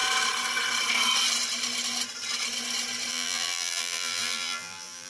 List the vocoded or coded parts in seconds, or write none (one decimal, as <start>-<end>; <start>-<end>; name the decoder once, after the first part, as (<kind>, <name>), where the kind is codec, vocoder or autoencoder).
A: 3.1-5.1 (vocoder, BigVGAN v2)